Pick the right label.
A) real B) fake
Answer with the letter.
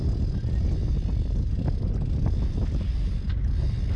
A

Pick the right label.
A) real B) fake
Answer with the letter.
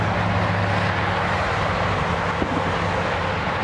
A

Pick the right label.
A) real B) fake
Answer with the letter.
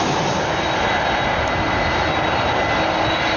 A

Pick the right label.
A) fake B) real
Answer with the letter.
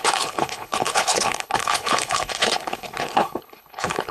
A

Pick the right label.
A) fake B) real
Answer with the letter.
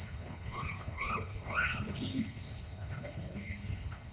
A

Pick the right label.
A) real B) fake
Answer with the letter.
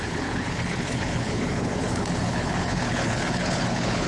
B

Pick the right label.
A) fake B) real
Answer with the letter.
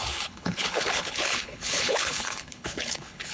A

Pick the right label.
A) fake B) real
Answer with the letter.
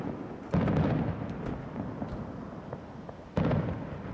B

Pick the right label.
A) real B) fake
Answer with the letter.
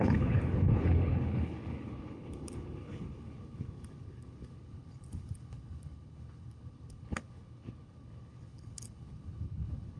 B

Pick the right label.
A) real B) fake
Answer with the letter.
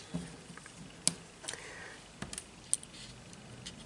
A